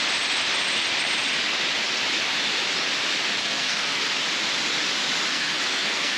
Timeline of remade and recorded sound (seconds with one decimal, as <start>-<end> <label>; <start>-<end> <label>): 0.0-3.4 recorded; 3.4-4.1 remade; 4.1-5.3 recorded; 5.3-6.2 remade